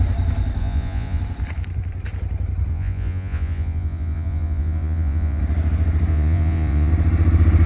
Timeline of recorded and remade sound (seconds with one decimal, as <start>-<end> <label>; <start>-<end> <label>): 0.0-0.6 recorded; 0.6-1.2 remade; 1.2-2.7 recorded; 2.7-5.4 remade; 5.4-6.1 recorded; 6.1-6.9 remade; 6.9-7.7 recorded